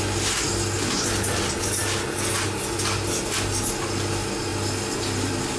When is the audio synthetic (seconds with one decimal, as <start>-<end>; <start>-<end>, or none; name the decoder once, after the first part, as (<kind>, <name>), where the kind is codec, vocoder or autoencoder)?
none